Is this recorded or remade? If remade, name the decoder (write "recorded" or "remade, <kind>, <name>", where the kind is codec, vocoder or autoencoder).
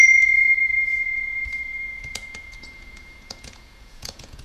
remade, vocoder, Vocos